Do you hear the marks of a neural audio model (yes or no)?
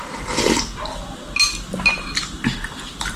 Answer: no